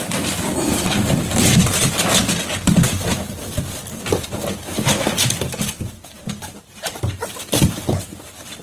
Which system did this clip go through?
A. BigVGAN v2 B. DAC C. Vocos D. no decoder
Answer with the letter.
A